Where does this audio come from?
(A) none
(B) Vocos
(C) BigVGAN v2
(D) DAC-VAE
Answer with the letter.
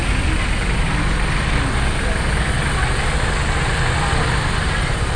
A